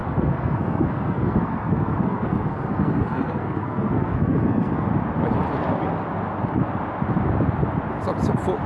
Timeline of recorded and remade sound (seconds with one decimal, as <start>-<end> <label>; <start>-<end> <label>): 0.0-4.9 remade; 4.9-8.7 recorded

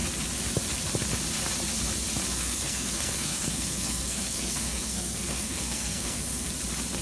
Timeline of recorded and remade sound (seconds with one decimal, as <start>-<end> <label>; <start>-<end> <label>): 0.0-2.3 recorded; 2.3-6.5 remade; 6.5-7.0 recorded

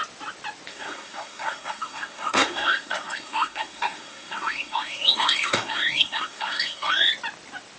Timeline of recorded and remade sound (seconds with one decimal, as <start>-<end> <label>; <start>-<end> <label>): 0.0-0.7 recorded; 0.7-7.1 remade; 7.1-7.8 recorded

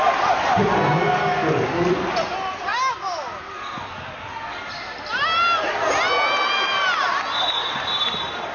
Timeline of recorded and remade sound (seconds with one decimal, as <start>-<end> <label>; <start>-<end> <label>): 0.0-8.5 recorded

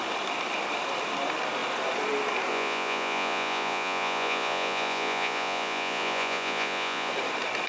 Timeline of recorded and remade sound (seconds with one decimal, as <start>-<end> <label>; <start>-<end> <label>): 0.0-2.5 recorded; 2.5-7.1 remade; 7.1-7.7 recorded

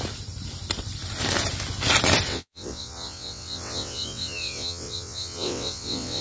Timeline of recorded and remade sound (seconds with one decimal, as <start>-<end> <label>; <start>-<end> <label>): 0.0-2.3 recorded; 2.3-6.2 remade